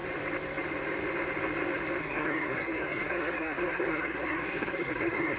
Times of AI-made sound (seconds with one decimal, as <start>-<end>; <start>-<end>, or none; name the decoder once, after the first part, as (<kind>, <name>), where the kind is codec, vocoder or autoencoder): 2.0-5.4 (codec, SNAC)